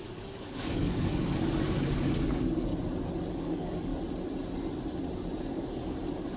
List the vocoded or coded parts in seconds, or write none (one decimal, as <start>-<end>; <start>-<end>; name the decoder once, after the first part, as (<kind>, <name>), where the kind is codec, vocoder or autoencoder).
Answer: 0.0-2.7 (codec, DAC); 3.3-3.9; 5.4-6.4